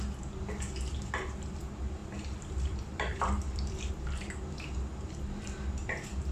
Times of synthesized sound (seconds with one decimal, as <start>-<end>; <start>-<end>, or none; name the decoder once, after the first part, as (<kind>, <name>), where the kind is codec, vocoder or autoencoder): 2.0-3.9 (vocoder, BigVGAN v2)